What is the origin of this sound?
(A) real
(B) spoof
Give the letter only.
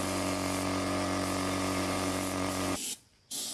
B